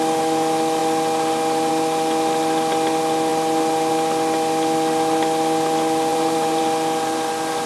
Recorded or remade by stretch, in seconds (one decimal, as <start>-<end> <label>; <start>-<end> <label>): 0.0-6.1 recorded; 6.1-6.6 remade; 6.6-7.7 recorded